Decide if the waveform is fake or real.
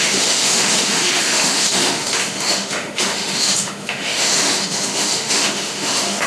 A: fake